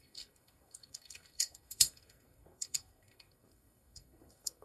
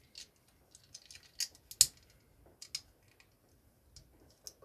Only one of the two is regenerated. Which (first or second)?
first